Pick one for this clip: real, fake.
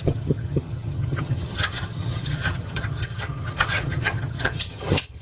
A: fake